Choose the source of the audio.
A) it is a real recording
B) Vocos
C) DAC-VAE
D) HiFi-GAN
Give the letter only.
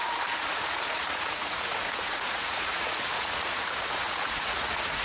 B